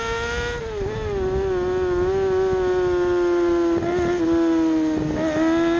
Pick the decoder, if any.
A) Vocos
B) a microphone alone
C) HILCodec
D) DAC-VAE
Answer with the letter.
B